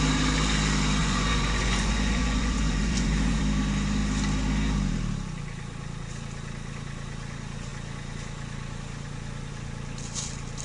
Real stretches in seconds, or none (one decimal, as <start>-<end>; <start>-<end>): 0.0-1.0; 3.4-10.6